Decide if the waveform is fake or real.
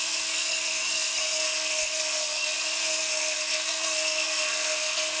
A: fake